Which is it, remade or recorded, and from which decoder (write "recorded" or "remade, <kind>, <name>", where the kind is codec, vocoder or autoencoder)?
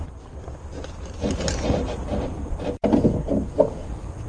recorded